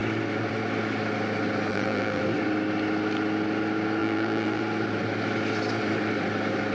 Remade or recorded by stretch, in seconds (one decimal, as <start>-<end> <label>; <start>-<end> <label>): 0.0-1.7 recorded; 1.7-2.2 remade; 2.2-4.0 recorded; 4.0-4.6 remade; 4.6-6.7 recorded